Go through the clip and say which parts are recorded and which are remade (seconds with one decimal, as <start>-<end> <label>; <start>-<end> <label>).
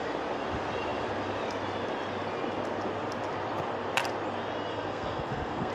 0.0-4.7 recorded; 4.7-5.7 remade